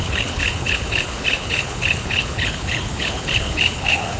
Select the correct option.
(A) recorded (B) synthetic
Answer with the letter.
B